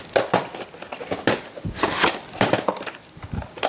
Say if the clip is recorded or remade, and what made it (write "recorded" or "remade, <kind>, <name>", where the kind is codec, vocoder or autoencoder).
recorded